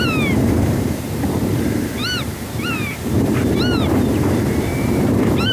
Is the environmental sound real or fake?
fake